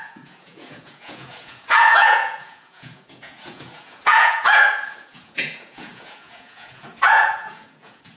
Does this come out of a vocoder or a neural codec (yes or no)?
yes